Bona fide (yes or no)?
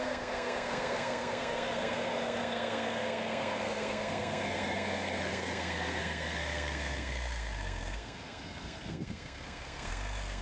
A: no